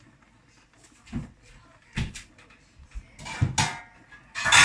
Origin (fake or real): real